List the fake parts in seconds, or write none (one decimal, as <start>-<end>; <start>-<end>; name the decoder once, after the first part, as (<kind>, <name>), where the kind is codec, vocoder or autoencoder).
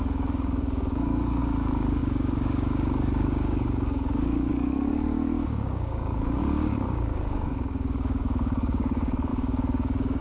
0.0-10.2 (codec, DAC)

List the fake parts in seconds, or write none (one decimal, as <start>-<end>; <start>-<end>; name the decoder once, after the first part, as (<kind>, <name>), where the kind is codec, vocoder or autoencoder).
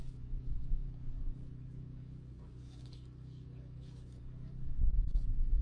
0.0-4.9 (codec, DAC)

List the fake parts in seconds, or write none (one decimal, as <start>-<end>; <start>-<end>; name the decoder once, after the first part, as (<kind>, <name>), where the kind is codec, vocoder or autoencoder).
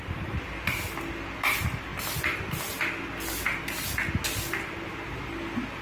none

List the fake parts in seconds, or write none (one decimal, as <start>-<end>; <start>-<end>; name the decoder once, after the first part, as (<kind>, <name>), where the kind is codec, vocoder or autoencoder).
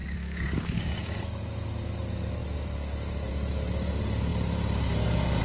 0.0-1.2 (codec, DAC)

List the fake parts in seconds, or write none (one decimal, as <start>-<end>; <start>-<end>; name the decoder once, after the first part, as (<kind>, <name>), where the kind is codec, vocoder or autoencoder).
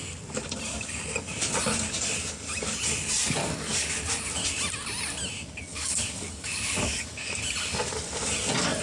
3.4-3.9 (codec, DAC); 5.7-7.4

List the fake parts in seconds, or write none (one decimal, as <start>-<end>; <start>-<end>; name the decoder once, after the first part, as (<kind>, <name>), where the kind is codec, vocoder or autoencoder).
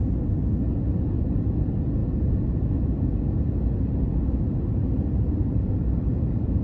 none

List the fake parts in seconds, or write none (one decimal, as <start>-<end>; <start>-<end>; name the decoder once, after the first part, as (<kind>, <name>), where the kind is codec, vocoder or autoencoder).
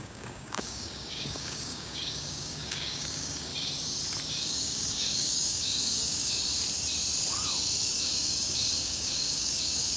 0.0-3.5 (codec, DAC); 4.3-6.5; 7.8-10.0